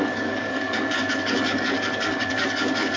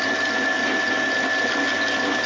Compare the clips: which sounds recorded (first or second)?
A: second